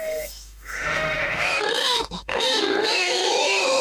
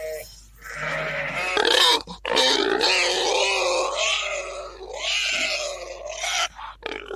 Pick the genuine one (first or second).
second